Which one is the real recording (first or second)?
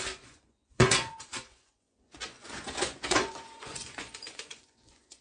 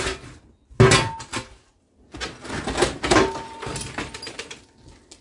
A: second